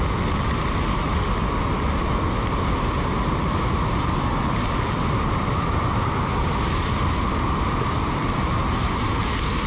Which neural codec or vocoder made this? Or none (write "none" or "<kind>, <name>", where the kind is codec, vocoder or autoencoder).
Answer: none